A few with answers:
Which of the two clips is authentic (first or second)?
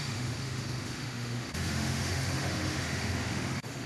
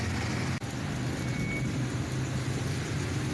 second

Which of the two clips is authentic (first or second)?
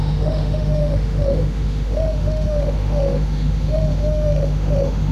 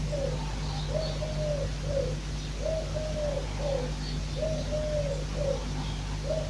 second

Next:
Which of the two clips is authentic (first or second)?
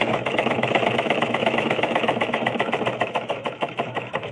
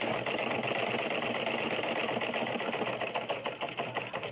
second